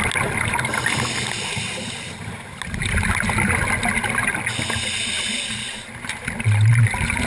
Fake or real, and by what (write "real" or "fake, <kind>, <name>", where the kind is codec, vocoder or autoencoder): real